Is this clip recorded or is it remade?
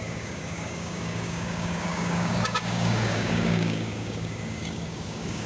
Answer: remade